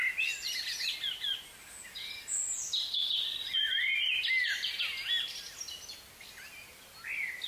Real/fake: real